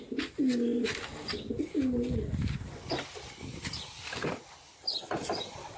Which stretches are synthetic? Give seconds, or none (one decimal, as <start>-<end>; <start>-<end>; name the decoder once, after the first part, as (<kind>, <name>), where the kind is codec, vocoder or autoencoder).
none